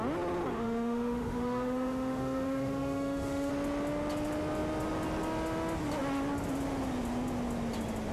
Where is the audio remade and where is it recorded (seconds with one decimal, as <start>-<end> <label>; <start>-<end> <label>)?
0.0-0.5 recorded; 0.5-3.5 remade; 3.5-8.1 recorded